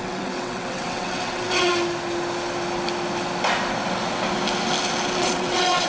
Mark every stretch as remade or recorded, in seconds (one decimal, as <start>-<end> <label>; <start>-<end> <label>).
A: 0.0-1.7 remade; 1.7-5.2 recorded; 5.2-5.9 remade